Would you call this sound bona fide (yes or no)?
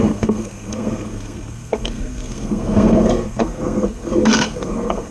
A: no